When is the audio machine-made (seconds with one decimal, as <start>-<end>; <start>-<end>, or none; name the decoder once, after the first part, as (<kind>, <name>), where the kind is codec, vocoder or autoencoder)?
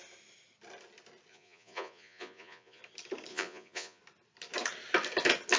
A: 1.3-2.8 (vocoder, Vocos); 3.3-4.0